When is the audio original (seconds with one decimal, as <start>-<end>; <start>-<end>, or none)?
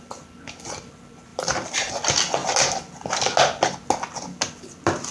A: 0.0-1.3; 1.9-5.1